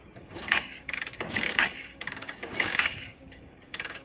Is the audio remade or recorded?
remade